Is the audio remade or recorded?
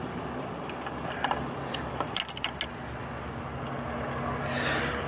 recorded